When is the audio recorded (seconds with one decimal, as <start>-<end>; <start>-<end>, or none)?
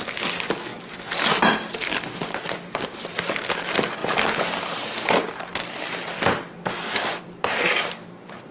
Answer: 0.0-8.5